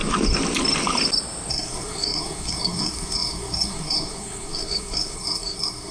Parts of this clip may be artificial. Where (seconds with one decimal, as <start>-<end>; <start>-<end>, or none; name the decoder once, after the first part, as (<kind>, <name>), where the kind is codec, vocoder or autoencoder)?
1.5-5.9 (codec, SNAC)